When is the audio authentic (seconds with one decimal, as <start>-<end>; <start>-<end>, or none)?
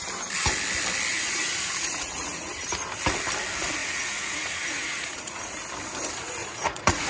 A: 0.0-1.1; 2.5-3.8; 5.4-6.4